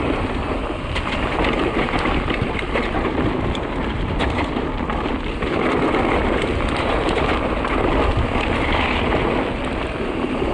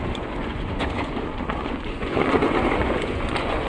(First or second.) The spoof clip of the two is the second